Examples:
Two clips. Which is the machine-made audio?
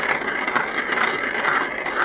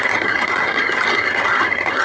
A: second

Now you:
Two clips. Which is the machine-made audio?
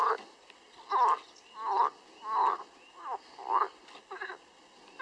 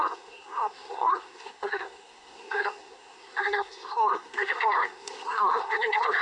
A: second